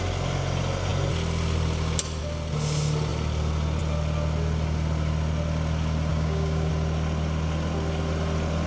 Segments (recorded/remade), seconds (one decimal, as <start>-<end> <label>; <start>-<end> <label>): 0.0-6.1 recorded; 6.1-6.7 remade; 6.7-8.7 recorded